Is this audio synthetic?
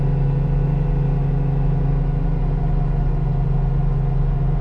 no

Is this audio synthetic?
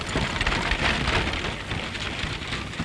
no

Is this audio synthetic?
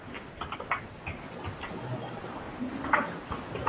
no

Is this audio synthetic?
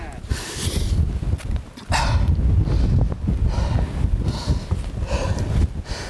no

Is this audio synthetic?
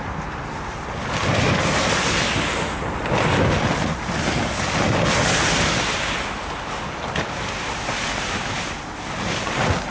no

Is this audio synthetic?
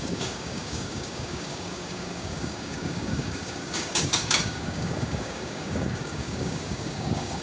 yes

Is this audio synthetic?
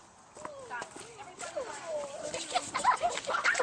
no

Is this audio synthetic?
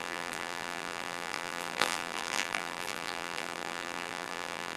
yes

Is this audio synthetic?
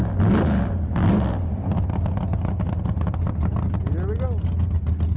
no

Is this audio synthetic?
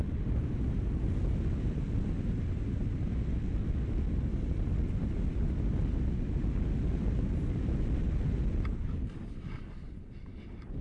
no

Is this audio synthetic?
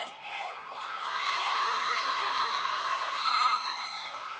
yes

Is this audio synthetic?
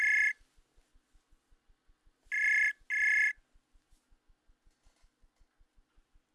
no